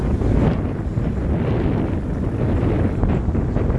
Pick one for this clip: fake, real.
real